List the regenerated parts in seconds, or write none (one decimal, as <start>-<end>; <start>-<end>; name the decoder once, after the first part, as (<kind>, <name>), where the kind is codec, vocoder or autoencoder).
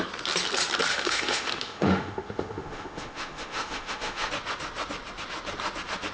0.9-4.3 (autoencoder, DAC-VAE)